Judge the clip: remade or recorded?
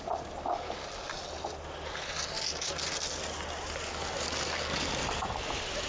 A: recorded